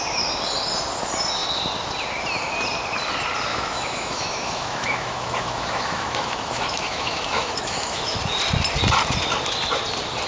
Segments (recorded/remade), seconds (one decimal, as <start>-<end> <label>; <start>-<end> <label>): 0.0-3.5 recorded; 3.5-8.2 remade; 8.2-10.3 recorded